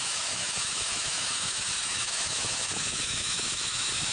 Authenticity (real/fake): fake